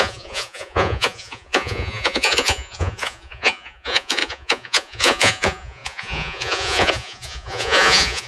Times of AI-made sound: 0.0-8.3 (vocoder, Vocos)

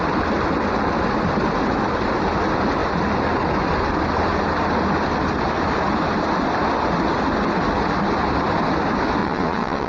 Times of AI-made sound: 9.2-9.9 (vocoder, Vocos)

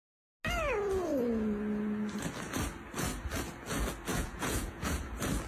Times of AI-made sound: 4.1-5.0 (vocoder, Vocos)

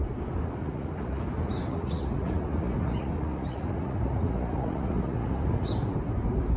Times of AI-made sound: 0.6-1.2 (vocoder, Vocos); 1.7-5.7

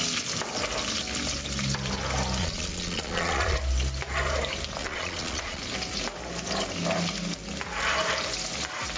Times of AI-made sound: 2.4-3.6 (vocoder, Vocos); 4.8-5.6

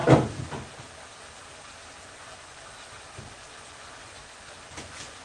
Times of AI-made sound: 2.0-2.6 (vocoder, Vocos); 3.3-4.2; 4.7-5.2

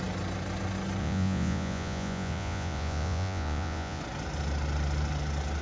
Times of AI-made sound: 1.0-4.0 (vocoder, Vocos)